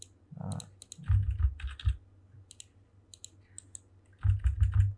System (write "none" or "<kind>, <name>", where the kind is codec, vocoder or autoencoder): none